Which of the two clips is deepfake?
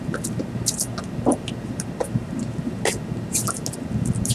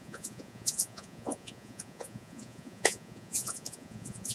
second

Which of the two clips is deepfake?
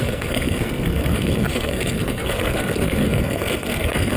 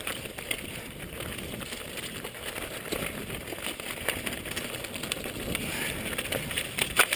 first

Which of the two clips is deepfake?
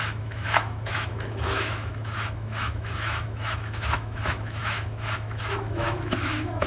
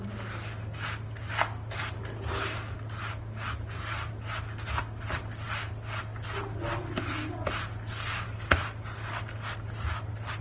first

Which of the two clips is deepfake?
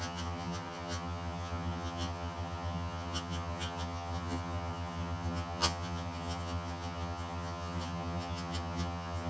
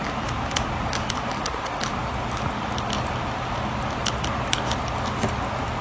first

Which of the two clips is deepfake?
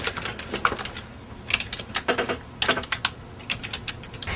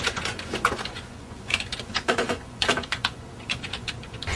second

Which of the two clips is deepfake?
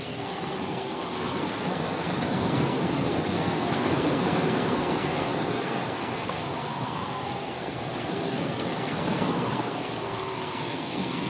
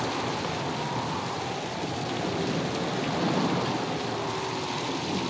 first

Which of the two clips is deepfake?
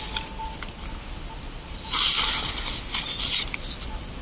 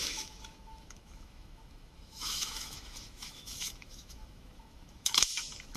second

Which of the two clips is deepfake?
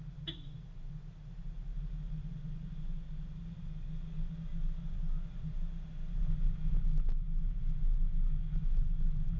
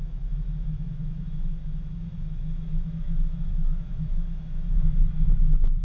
second